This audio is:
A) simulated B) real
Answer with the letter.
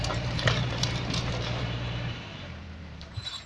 A